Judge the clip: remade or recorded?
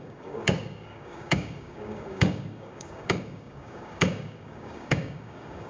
remade